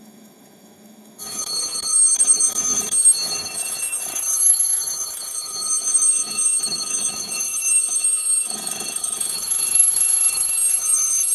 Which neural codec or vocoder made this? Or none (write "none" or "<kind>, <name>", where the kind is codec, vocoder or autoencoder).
autoencoder, DAC-VAE